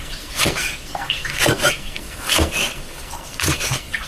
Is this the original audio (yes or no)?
no